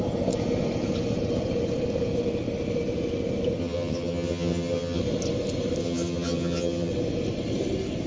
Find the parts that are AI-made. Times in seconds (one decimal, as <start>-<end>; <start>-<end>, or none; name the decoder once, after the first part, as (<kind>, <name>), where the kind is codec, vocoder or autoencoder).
3.6-5.0 (vocoder, HiFi-GAN); 5.8-6.9